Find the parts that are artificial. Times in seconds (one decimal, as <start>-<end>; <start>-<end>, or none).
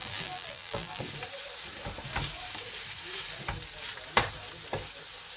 0.0-1.0